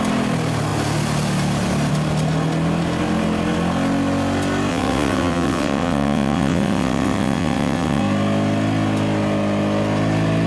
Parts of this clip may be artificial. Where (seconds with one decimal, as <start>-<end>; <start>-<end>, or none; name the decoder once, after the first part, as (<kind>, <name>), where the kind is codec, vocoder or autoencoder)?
4.7-8.0 (vocoder, WaveNeXt)